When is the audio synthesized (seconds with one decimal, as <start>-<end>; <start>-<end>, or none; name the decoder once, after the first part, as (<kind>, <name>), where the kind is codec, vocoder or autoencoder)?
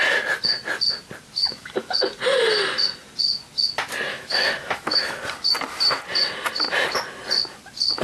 1.4-1.9 (autoencoder, DAC-VAE); 4.1-5.2